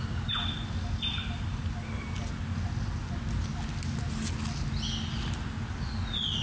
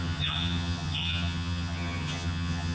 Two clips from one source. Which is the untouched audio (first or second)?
first